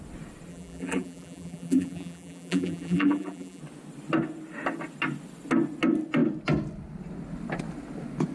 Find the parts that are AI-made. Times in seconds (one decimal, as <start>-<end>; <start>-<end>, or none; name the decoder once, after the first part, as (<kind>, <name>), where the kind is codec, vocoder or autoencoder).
0.5-3.6 (vocoder, BigVGAN v2)